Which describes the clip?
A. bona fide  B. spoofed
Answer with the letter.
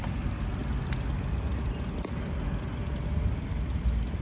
A